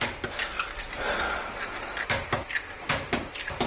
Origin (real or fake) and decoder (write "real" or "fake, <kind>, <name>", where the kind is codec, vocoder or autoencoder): real